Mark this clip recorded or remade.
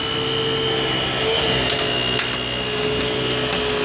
recorded